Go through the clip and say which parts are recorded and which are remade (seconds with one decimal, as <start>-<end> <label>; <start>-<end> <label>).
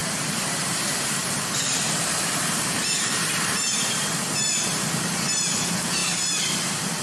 0.0-4.2 remade; 4.2-6.0 recorded; 6.0-7.0 remade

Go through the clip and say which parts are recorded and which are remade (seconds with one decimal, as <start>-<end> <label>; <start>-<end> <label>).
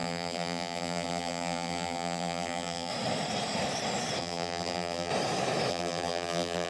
0.0-2.9 remade; 2.9-4.2 recorded; 4.2-5.1 remade; 5.1-5.7 recorded; 5.7-6.7 remade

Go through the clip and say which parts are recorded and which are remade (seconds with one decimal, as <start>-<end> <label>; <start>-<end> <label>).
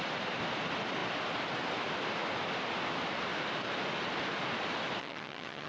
0.0-5.0 recorded; 5.0-5.7 remade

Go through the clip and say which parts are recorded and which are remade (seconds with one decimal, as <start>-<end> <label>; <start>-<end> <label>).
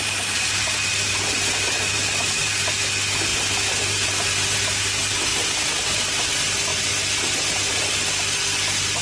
0.0-9.0 recorded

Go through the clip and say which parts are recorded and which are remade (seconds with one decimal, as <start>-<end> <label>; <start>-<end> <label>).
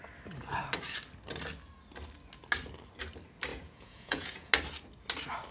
0.0-3.5 recorded; 3.5-4.5 remade; 4.5-5.5 recorded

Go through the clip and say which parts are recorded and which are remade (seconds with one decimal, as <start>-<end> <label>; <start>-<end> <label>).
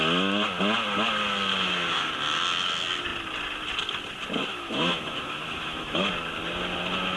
0.0-1.5 recorded; 1.5-2.1 remade; 2.1-4.5 recorded; 4.5-6.1 remade; 6.1-7.2 recorded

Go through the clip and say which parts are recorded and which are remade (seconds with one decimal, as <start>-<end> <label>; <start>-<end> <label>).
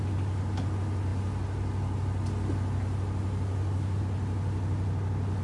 0.0-5.4 recorded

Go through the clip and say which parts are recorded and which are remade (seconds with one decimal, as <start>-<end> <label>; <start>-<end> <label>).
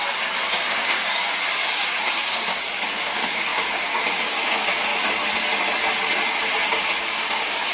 0.0-0.5 recorded; 0.5-4.9 remade; 4.9-7.1 recorded; 7.1-7.7 remade